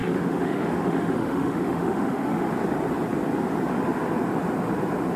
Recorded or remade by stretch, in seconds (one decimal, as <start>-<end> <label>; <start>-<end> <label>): 0.0-2.5 remade; 2.5-5.2 recorded